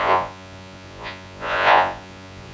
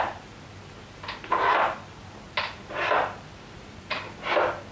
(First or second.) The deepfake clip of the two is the first